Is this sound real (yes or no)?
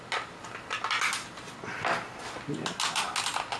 yes